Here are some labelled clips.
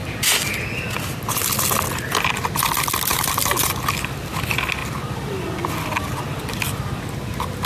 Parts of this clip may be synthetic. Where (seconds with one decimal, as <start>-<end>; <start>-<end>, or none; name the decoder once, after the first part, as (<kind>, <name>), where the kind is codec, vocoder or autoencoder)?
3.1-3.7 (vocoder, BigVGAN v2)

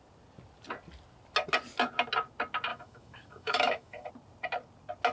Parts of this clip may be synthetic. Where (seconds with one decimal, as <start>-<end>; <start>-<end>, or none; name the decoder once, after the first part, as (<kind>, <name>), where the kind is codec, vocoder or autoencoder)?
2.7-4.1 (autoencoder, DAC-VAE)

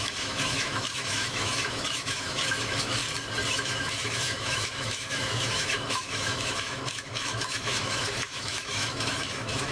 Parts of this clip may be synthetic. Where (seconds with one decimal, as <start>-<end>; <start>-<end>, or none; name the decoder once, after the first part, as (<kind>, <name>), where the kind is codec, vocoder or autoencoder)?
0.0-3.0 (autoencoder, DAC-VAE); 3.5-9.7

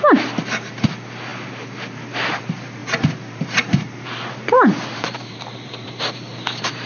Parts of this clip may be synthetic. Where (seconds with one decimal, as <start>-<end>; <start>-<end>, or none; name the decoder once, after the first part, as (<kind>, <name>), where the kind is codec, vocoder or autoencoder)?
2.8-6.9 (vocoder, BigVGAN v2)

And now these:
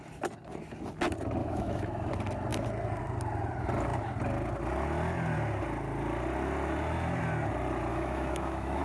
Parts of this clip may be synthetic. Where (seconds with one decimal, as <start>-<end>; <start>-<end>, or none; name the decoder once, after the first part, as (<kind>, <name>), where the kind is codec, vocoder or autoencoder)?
1.4-2.1 (autoencoder, DAC-VAE); 7.9-8.8

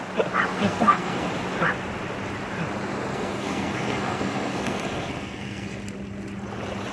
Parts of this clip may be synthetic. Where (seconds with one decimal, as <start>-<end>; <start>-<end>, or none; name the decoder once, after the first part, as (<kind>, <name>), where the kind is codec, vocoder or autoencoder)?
0.5-1.3 (codec, SNAC); 3.1-5.8